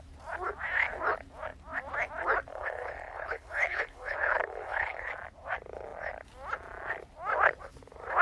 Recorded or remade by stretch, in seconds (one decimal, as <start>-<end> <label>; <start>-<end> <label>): 0.0-2.5 recorded; 2.5-5.1 remade; 5.1-8.2 recorded